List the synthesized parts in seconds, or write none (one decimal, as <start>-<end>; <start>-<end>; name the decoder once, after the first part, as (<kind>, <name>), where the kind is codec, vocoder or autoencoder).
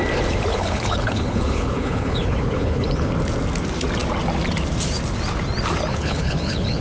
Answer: 0.5-3.1 (codec, HILCodec); 5.9-6.8